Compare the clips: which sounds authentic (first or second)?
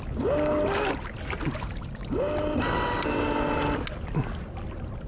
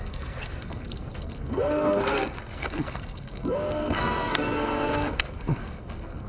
first